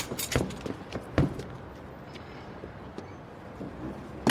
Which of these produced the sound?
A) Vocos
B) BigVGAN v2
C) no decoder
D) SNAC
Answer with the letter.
C